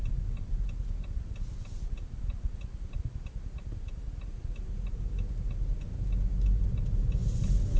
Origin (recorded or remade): recorded